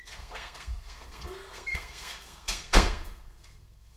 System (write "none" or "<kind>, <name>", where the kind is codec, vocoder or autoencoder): codec, SNAC